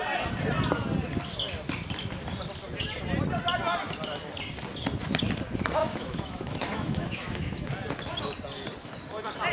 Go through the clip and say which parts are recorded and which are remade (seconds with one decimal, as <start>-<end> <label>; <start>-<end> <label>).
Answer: 0.0-5.8 recorded; 5.8-7.7 remade; 7.7-9.5 recorded